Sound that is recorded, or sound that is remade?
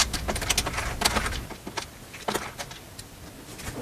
recorded